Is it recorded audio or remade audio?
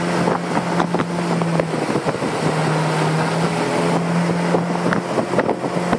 recorded